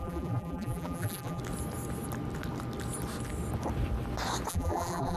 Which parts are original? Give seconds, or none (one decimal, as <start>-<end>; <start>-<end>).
1.4-4.5

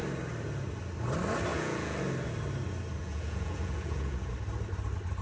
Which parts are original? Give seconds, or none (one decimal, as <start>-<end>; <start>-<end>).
0.0-1.5; 2.0-3.0; 4.3-5.2

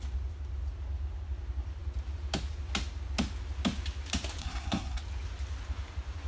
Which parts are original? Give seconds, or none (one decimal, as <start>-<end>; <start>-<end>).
0.0-4.4; 5.0-6.3

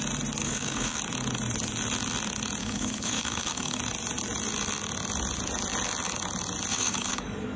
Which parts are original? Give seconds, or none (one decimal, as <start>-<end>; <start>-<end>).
0.0-0.4; 1.0-2.6; 3.8-6.7